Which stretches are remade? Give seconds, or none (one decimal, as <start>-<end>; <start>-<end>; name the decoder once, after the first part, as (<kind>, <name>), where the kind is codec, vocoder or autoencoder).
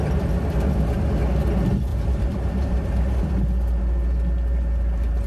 1.9-3.4 (vocoder, BigVGAN v2)